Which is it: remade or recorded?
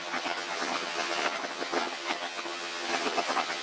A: remade